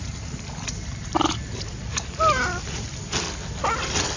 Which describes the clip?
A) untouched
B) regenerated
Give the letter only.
A